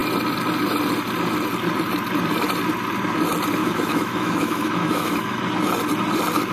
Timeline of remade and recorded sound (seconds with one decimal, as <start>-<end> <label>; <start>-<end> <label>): 0.0-3.6 recorded; 3.6-5.4 remade; 5.4-6.5 recorded